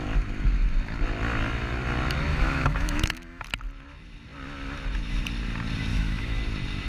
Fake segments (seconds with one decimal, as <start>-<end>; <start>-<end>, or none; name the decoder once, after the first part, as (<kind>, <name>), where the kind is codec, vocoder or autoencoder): 2.3-3.4 (autoencoder, DAC-VAE); 5.9-6.4